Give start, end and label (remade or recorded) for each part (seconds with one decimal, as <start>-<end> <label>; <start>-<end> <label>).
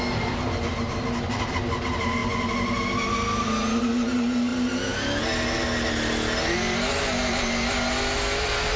0.0-8.8 recorded